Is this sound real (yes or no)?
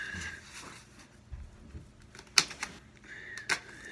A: yes